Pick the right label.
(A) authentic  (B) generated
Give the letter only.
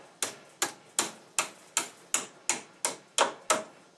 A